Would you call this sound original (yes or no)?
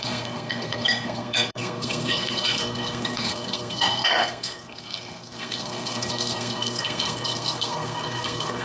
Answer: no